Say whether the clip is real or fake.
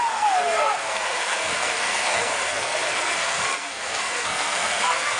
fake